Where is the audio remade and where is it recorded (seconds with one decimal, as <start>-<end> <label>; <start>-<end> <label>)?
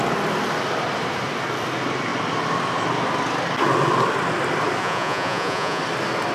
0.0-4.8 recorded; 4.8-5.8 remade; 5.8-6.3 recorded